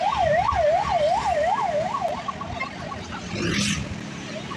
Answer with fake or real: real